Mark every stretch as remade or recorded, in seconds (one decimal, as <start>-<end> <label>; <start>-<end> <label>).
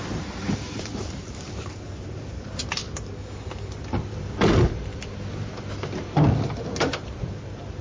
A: 0.0-2.8 remade; 2.8-3.4 recorded; 3.4-4.9 remade; 4.9-6.8 recorded; 6.8-7.8 remade